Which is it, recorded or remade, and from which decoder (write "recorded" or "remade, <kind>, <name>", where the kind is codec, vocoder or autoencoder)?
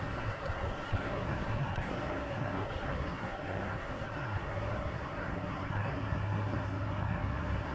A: remade, codec, SNAC